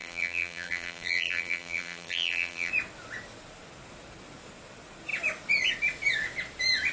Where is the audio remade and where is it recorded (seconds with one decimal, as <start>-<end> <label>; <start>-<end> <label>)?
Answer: 0.0-2.7 remade; 2.7-6.9 recorded